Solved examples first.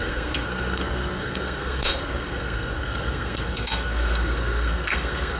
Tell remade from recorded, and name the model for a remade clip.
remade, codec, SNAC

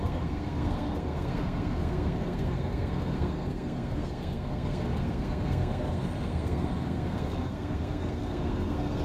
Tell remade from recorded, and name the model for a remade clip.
remade, codec, SNAC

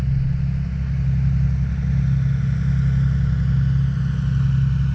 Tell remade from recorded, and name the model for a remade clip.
recorded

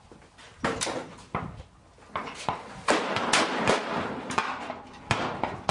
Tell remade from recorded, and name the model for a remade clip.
recorded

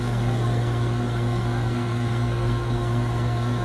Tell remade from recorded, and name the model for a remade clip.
remade, codec, SNAC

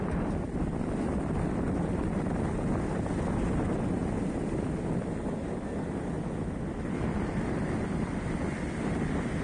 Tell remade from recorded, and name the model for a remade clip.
recorded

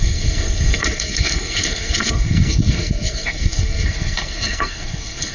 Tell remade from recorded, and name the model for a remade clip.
remade, codec, SNAC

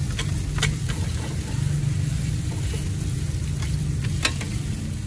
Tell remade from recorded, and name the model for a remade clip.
recorded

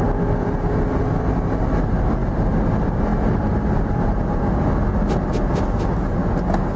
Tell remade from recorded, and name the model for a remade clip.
recorded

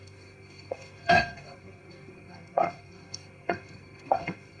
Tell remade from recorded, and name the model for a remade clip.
remade, codec, SNAC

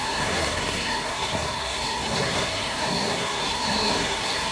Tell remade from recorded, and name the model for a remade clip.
remade, codec, SNAC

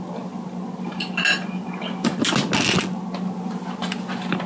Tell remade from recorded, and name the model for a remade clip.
recorded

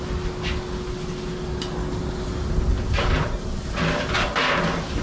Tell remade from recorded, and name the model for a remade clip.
recorded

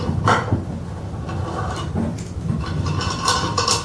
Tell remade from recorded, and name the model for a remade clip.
recorded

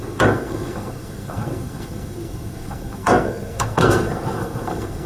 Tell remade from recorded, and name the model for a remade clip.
remade, codec, SNAC